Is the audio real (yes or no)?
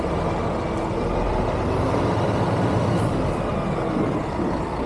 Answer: yes